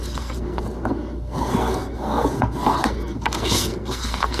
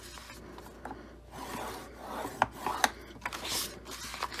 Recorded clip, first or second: second